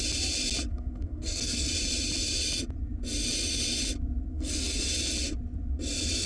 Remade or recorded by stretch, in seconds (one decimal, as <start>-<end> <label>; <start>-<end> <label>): 0.0-0.7 recorded; 0.7-1.7 remade; 1.7-4.3 recorded; 4.3-4.9 remade; 4.9-6.3 recorded